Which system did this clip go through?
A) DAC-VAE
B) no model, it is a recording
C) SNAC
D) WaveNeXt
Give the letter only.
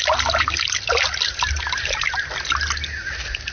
B